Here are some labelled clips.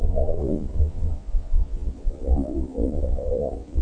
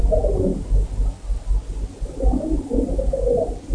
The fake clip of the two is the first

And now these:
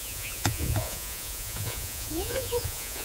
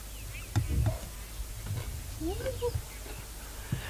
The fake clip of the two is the first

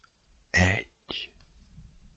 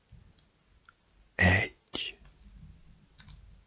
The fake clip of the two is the first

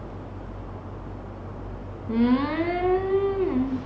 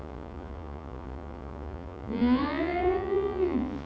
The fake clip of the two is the second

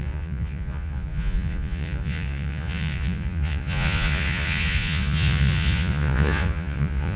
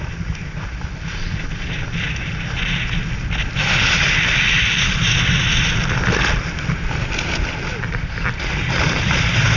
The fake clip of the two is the first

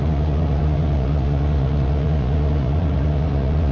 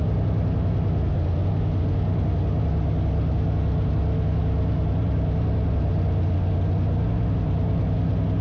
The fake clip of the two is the first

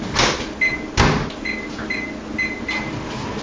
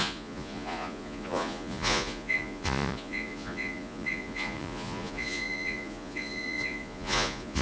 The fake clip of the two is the second